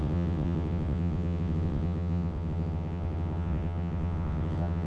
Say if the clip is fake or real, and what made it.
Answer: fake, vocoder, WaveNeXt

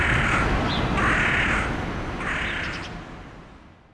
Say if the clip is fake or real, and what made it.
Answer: real